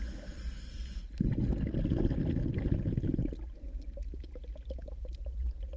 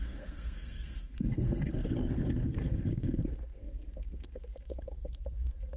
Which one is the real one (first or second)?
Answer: first